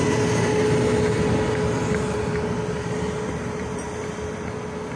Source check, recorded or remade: recorded